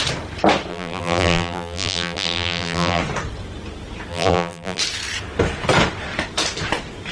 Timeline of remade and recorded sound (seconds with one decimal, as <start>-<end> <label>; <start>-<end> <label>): 0.0-0.7 recorded; 0.7-3.0 remade; 3.0-4.1 recorded; 4.1-4.8 remade; 4.8-7.1 recorded